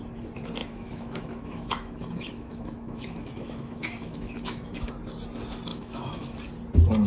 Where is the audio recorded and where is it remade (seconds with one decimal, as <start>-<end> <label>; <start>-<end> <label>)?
0.0-0.6 recorded; 0.6-4.9 remade; 4.9-5.7 recorded; 5.7-6.4 remade; 6.4-7.1 recorded